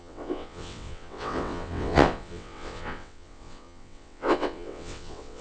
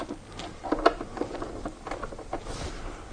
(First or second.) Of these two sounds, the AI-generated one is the first